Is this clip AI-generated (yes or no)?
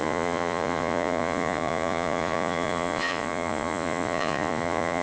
yes